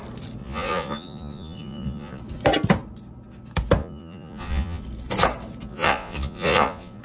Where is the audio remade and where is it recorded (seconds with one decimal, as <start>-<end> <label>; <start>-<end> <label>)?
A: 0.0-0.4 recorded; 0.4-2.2 remade; 2.2-3.8 recorded; 3.8-4.8 remade; 4.8-5.7 recorded; 5.7-7.0 remade